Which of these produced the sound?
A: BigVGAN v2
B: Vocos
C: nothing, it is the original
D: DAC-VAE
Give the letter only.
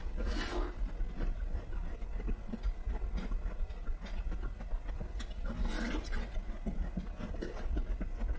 C